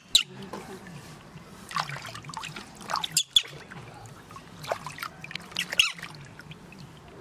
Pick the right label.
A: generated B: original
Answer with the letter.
B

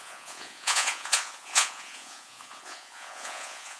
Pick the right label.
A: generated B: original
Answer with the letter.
A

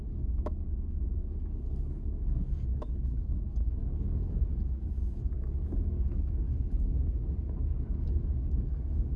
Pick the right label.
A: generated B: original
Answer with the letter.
A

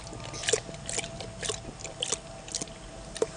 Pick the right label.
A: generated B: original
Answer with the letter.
B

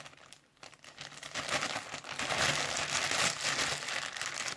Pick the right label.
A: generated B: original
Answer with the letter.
B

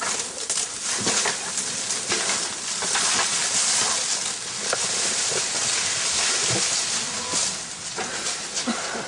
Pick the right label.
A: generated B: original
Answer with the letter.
B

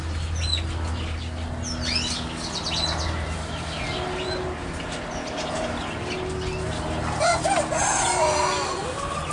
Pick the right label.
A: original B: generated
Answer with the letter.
A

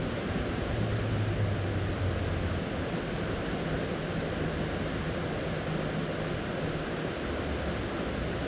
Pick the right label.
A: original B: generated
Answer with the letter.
A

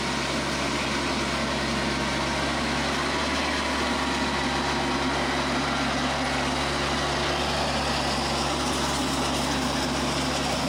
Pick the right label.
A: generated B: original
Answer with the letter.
B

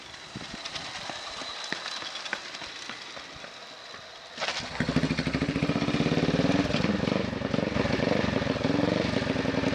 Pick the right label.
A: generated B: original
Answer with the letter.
B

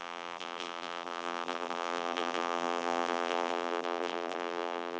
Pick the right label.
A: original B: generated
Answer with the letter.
B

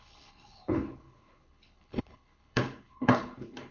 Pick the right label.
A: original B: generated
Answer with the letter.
B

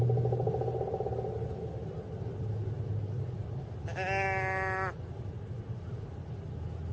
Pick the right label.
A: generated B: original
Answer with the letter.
B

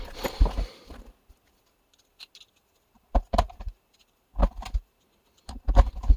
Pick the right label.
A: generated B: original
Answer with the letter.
B